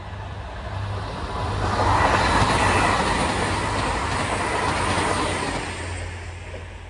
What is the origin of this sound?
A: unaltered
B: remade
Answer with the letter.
A